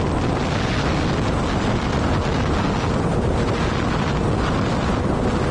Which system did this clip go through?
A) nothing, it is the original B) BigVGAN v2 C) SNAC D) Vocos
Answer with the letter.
A